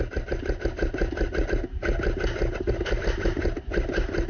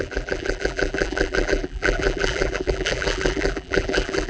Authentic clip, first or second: first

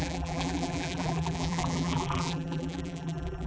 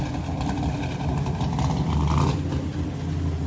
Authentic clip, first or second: second